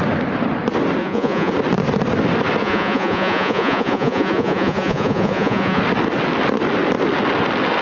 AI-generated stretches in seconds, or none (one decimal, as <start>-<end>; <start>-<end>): 1.0-1.5; 2.6-5.8